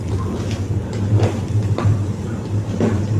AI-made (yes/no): no